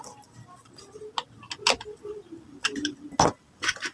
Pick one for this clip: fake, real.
real